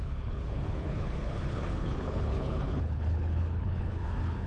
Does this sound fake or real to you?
fake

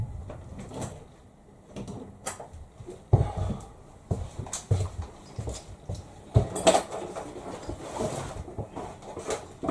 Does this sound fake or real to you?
real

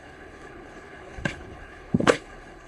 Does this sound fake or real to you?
fake